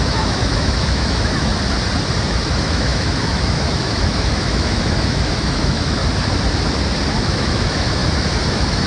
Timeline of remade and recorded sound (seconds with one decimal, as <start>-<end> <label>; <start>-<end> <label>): 0.0-1.5 remade; 1.5-2.3 recorded; 2.3-6.0 remade; 6.0-7.2 recorded; 7.2-8.0 remade; 8.0-8.5 recorded; 8.5-8.9 remade